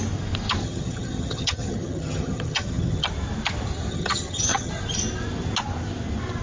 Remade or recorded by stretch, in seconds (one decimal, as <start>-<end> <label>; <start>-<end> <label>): 0.0-0.6 recorded; 0.6-3.1 remade; 3.1-3.9 recorded; 3.9-4.7 remade; 4.7-6.4 recorded